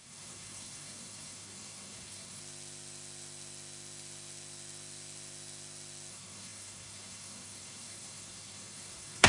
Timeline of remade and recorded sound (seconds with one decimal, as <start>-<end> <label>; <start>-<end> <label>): 0.0-2.4 remade; 2.4-6.1 recorded; 6.1-9.3 remade